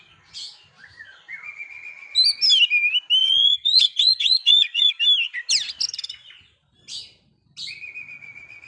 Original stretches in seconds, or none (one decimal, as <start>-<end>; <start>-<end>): 0.0-3.2; 4.9-8.7